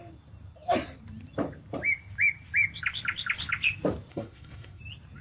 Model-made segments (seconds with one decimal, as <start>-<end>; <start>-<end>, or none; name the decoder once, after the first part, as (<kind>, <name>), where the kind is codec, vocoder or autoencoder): 4.1-4.8 (codec, SNAC)